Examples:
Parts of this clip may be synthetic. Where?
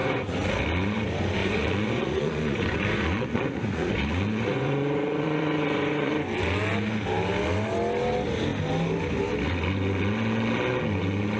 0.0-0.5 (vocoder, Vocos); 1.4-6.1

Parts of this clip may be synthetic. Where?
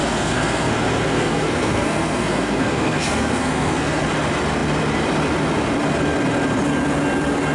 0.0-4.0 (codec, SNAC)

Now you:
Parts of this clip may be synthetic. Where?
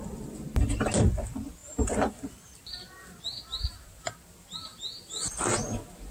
1.6-2.6 (vocoder, BigVGAN v2)